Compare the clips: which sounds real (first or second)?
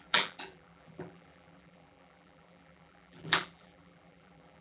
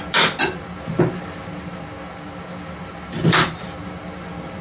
second